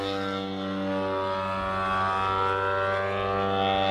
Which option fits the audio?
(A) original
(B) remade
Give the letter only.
A